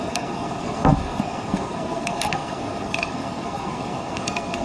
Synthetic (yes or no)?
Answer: yes